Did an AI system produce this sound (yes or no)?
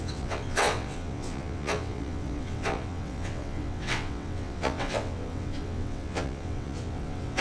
yes